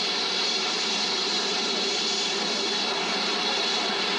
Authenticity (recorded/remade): recorded